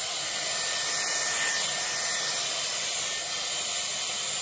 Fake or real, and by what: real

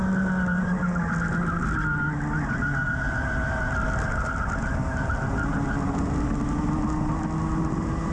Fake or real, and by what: real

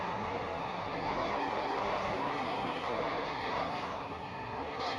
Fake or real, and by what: fake, codec, SNAC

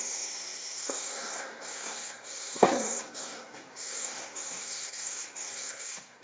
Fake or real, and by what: fake, codec, SNAC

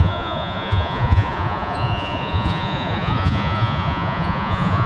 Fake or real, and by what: fake, vocoder, Vocos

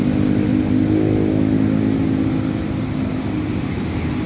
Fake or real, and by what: real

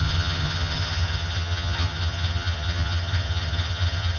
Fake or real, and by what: fake, vocoder, HiFi-GAN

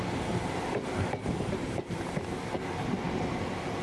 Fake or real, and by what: real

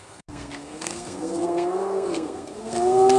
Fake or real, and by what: fake, codec, SNAC